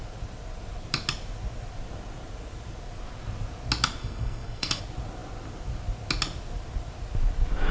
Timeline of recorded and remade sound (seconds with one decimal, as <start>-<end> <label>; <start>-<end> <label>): 0.0-4.0 recorded; 4.0-4.8 remade; 4.8-7.7 recorded